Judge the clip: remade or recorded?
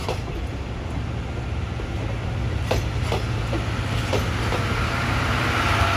recorded